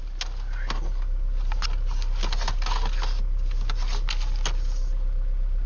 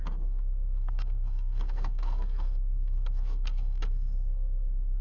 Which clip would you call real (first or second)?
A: first